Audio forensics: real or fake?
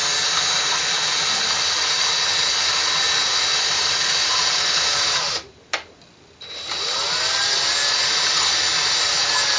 real